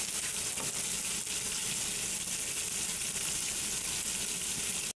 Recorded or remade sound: recorded